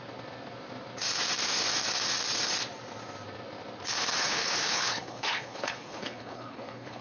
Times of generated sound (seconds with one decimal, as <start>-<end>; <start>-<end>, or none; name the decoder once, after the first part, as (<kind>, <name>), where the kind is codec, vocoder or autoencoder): 4.2-7.0 (codec, HILCodec)